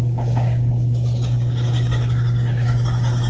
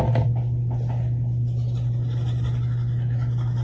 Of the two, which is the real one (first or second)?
second